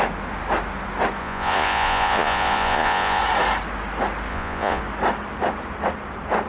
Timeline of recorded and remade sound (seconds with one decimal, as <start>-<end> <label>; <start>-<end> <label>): 0.0-1.2 recorded; 1.2-3.2 remade; 3.2-4.3 recorded; 4.3-4.8 remade; 4.8-6.5 recorded